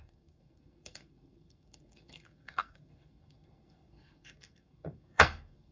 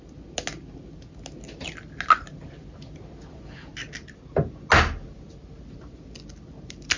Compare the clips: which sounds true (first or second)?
second